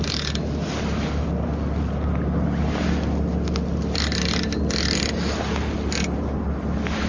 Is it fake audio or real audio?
real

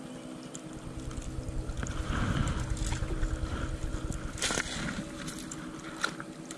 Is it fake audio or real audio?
real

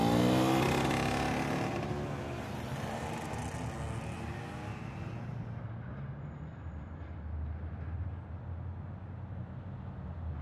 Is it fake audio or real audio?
real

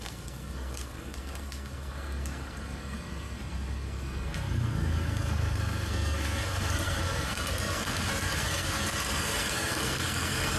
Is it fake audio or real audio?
fake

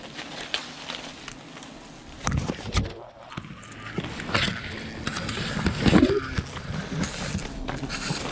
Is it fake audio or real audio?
real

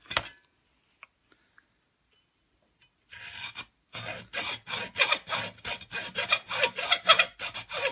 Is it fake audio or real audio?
real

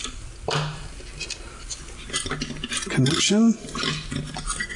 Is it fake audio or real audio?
real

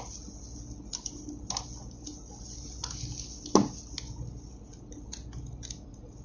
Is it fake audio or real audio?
real